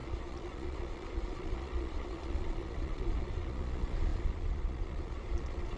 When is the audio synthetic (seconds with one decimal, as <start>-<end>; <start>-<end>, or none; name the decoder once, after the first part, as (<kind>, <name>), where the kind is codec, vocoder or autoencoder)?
0.0-5.8 (vocoder, Vocos)